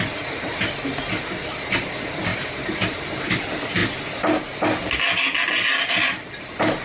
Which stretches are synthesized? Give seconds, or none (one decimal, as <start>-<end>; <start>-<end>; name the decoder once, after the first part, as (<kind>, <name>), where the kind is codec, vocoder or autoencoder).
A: none